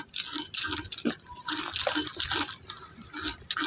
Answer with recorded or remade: recorded